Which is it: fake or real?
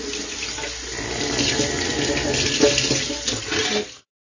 real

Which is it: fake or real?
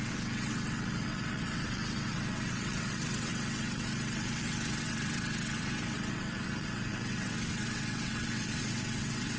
fake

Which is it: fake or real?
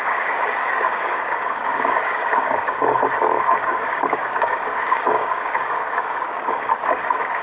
fake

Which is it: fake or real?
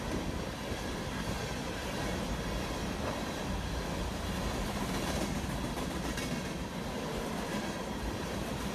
real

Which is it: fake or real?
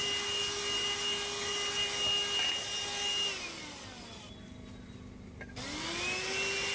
real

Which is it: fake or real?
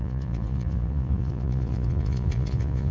fake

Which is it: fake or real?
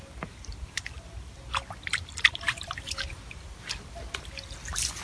real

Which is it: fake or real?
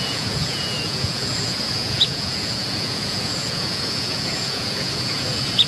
fake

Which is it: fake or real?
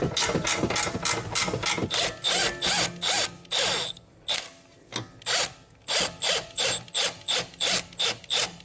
real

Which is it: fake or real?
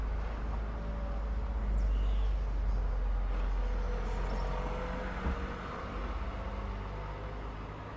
real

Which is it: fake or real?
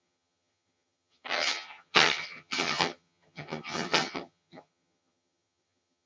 fake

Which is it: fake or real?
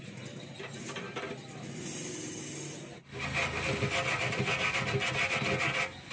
real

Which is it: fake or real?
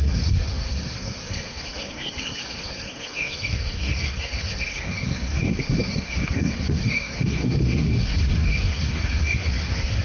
fake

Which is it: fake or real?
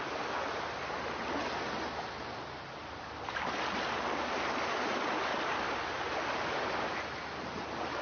real